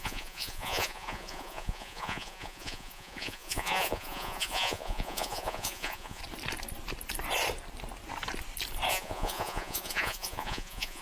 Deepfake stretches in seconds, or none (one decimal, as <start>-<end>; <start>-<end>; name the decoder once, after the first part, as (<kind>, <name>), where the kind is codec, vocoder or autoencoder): 0.0-6.2 (vocoder, Vocos); 8.9-11.0